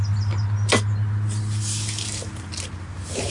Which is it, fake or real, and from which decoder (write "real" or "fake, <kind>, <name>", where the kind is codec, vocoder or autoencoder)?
real